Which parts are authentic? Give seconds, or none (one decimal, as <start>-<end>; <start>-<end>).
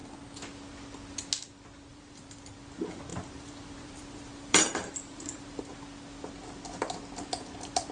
0.0-1.9; 2.4-3.1; 5.6-7.9